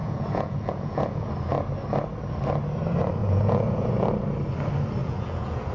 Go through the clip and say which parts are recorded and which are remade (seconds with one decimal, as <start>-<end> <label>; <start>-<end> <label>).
0.0-1.3 remade; 1.3-3.2 recorded; 3.2-3.9 remade; 3.9-5.0 recorded; 5.0-5.7 remade

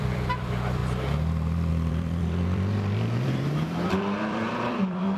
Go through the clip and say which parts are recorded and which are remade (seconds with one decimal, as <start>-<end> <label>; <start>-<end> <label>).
0.0-0.8 remade; 0.8-1.7 recorded; 1.7-5.2 remade

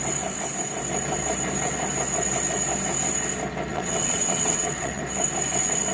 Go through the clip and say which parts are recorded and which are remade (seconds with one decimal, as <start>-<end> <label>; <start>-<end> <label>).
0.0-3.7 recorded; 3.7-5.0 remade; 5.0-5.9 recorded

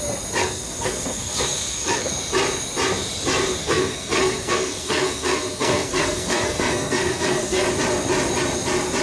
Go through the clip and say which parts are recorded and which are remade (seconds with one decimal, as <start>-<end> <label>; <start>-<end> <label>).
0.0-0.4 recorded; 0.4-2.1 remade; 2.1-3.6 recorded; 3.6-7.7 remade; 7.7-9.0 recorded